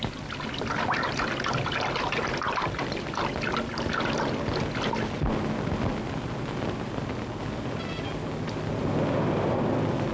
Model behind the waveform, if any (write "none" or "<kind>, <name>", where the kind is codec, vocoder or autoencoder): none